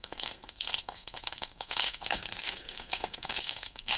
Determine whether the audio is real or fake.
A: fake